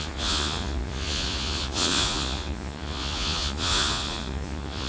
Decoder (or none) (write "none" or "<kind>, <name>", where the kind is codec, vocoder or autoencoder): vocoder, Vocos